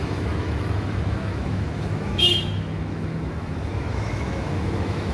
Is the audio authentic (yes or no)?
no